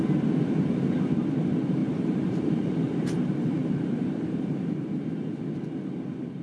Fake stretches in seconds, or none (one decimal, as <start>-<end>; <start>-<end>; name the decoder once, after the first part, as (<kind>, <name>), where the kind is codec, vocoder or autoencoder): 1.8-5.1 (vocoder, BigVGAN v2)